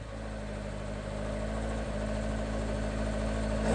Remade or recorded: recorded